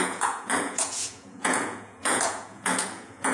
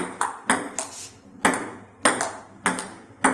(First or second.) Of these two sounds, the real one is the second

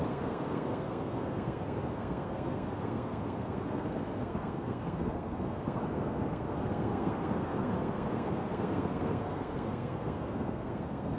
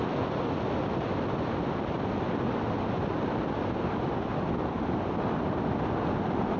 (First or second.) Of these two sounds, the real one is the second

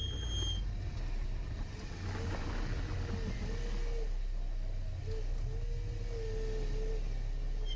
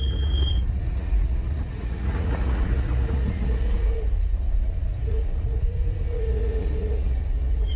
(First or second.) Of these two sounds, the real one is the first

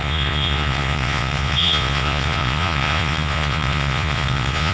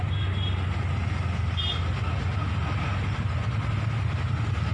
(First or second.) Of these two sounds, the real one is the second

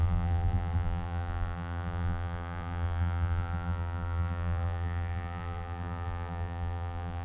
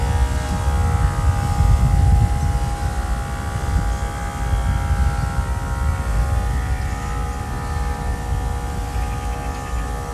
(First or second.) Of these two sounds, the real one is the second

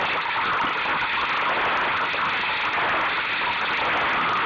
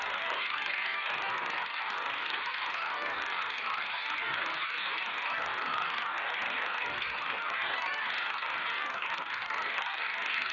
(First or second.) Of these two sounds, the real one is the first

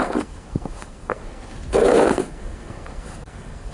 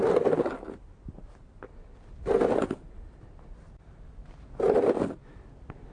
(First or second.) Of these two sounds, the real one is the second